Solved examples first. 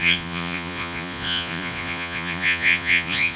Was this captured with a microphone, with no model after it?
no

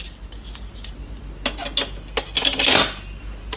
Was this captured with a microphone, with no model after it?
yes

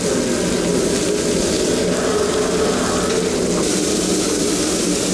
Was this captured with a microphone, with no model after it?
yes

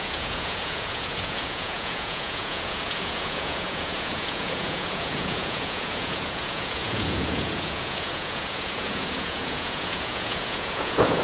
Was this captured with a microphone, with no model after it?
no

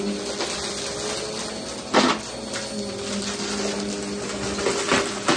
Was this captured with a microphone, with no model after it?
yes